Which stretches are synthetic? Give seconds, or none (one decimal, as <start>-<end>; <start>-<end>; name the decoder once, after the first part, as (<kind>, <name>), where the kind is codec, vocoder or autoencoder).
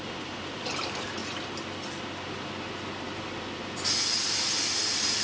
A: 0.0-1.2 (vocoder, BigVGAN v2); 4.3-5.2